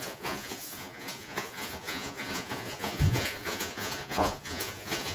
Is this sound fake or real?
fake